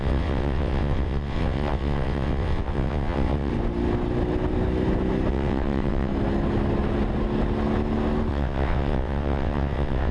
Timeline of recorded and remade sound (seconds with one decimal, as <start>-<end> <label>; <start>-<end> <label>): 0.0-3.5 remade; 3.5-5.3 recorded; 5.3-6.1 remade; 6.1-8.3 recorded; 8.3-10.1 remade